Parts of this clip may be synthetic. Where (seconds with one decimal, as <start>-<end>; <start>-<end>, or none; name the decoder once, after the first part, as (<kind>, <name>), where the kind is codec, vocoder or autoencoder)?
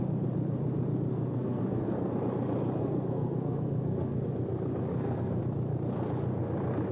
1.1-2.1 (codec, SNAC); 2.8-4.3; 4.9-5.4